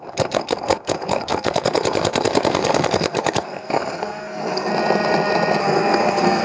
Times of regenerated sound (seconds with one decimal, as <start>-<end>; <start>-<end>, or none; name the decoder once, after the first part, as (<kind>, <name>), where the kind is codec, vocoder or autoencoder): 0.0-4.7 (codec, SNAC); 5.6-6.4